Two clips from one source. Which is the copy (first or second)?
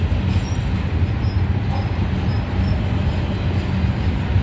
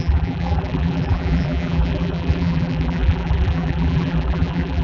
second